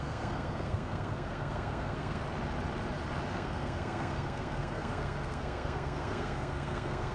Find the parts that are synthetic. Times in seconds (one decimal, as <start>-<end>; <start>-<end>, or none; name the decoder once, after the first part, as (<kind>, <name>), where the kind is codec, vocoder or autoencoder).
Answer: 0.0-2.2 (codec, SNAC); 3.3-7.1